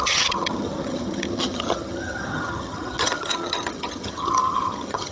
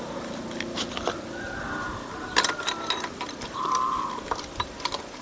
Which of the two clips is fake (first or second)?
first